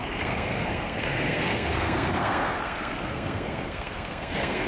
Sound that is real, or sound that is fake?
fake